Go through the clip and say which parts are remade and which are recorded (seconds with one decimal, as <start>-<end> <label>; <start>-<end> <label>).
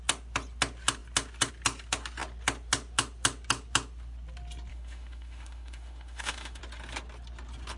0.0-4.7 recorded; 4.7-6.6 remade; 6.6-7.8 recorded